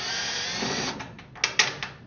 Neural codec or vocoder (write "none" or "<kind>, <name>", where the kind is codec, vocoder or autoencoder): none